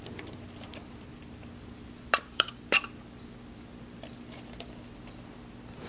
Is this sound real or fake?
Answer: fake